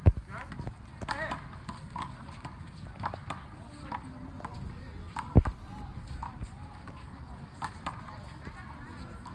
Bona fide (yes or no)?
yes